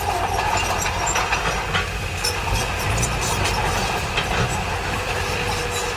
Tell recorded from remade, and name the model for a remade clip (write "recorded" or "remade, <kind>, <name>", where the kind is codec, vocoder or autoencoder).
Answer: recorded